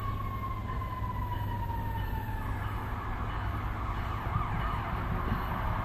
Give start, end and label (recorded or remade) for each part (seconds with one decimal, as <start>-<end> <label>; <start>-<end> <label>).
0.0-5.8 recorded